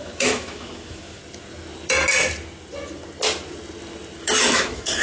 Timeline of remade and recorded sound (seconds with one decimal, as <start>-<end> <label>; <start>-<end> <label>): 0.0-1.2 remade; 1.2-4.2 recorded; 4.2-5.0 remade